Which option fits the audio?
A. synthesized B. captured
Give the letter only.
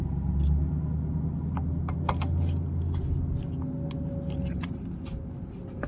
B